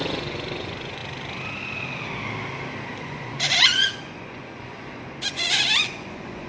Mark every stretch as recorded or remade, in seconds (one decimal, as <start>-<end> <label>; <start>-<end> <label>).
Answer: 0.0-1.0 remade; 1.0-3.0 recorded; 3.0-6.5 remade